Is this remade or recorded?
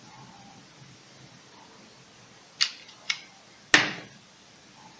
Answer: recorded